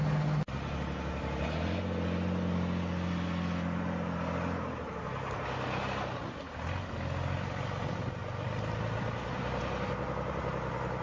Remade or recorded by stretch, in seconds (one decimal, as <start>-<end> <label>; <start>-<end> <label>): 0.0-11.0 recorded